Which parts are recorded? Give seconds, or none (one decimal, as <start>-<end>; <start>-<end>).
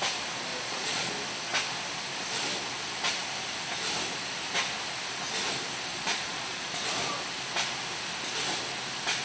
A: 0.0-0.5; 1.1-5.9; 6.8-9.2